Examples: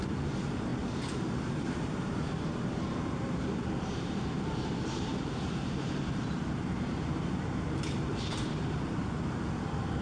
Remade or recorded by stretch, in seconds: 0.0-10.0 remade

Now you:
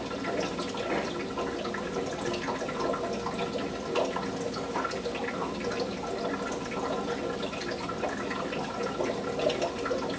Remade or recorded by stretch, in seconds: 0.0-10.2 recorded

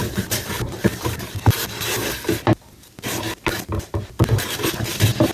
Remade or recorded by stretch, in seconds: 0.0-0.9 remade; 0.9-4.1 recorded; 4.1-5.3 remade

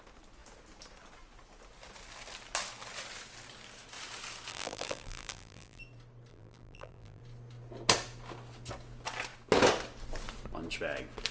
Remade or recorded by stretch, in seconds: 0.0-4.5 recorded; 4.5-5.8 remade; 5.8-6.3 recorded; 6.3-7.2 remade; 7.2-11.3 recorded

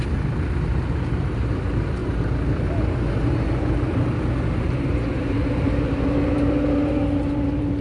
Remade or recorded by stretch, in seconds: 0.0-2.0 remade; 2.0-4.6 recorded; 4.6-7.8 remade